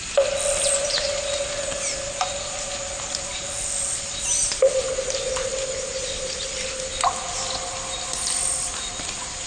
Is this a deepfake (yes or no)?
no